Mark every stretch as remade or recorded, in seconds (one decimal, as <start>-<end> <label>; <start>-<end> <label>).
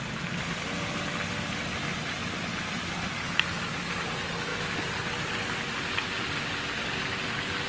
0.0-7.7 recorded